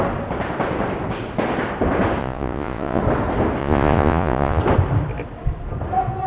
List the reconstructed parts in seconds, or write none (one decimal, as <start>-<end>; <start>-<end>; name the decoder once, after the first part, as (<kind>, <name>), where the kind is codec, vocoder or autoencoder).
2.2-3.0 (vocoder, Vocos); 3.6-4.6